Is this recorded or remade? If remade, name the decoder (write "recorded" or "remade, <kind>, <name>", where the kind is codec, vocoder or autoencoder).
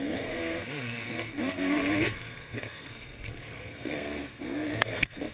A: remade, codec, SNAC